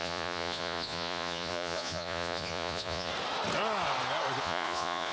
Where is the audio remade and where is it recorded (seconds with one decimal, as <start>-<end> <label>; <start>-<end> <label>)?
0.0-3.1 remade; 3.1-4.4 recorded; 4.4-5.1 remade